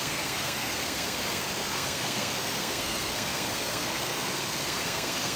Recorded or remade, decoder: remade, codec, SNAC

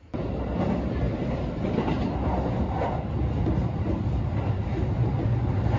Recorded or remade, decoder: recorded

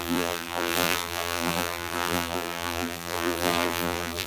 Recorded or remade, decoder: remade, vocoder, BigVGAN v2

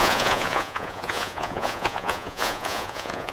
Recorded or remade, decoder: remade, vocoder, Vocos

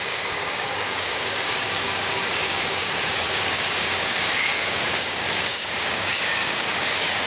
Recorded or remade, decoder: remade, codec, DAC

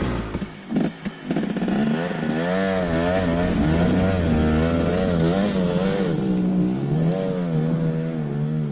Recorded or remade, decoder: recorded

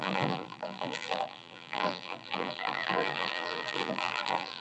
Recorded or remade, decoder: remade, vocoder, BigVGAN v2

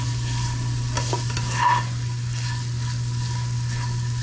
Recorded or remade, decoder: recorded